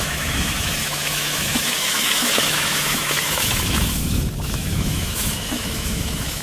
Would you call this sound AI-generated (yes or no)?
yes